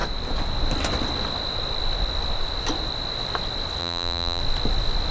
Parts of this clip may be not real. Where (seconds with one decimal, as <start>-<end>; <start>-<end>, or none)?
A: 3.8-4.4